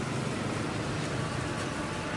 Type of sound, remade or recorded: recorded